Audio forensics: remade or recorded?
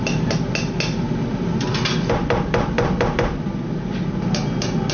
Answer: recorded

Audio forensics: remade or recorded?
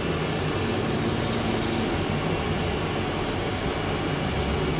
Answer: recorded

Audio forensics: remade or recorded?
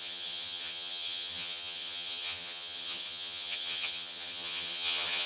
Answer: remade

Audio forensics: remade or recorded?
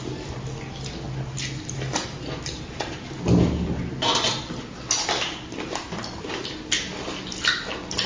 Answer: recorded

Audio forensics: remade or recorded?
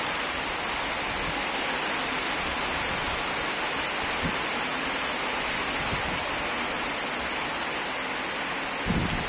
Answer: recorded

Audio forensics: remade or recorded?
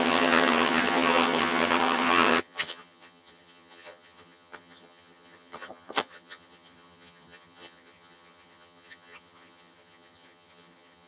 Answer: remade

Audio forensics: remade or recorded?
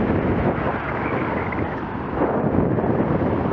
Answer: recorded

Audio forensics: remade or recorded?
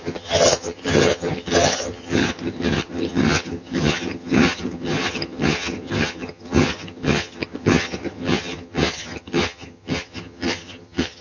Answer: remade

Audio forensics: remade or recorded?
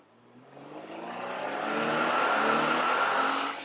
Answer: recorded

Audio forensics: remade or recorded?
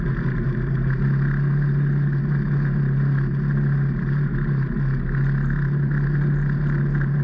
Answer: recorded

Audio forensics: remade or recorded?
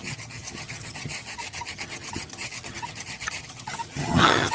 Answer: remade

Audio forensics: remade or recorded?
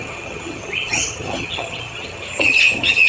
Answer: remade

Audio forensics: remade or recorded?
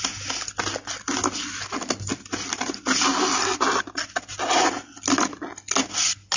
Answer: recorded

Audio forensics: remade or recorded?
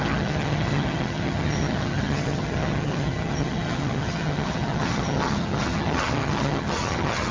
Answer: remade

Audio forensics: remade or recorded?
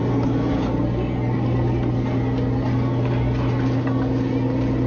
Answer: recorded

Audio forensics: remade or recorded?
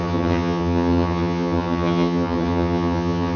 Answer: remade